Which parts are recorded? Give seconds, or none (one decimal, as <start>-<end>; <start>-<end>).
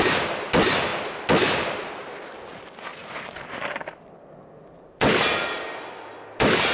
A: 0.0-6.7